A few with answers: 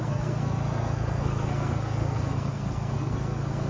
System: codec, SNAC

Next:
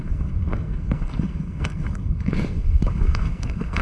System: codec, SNAC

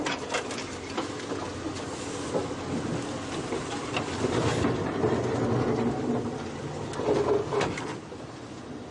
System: none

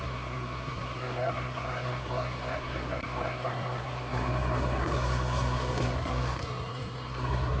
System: codec, SNAC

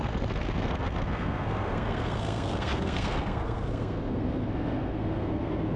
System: codec, SNAC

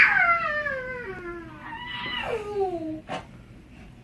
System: none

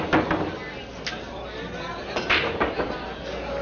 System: none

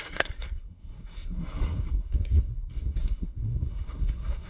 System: codec, SNAC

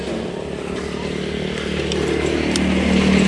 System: none